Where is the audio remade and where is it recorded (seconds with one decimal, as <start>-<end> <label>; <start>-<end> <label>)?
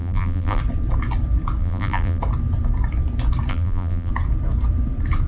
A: 0.0-0.6 remade; 0.6-1.6 recorded; 1.6-2.2 remade; 2.2-3.5 recorded; 3.5-4.1 remade; 4.1-5.3 recorded